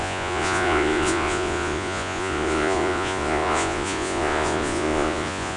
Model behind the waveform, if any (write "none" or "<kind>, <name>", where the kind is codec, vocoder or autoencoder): vocoder, Vocos